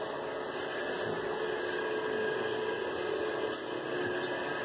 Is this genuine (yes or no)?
yes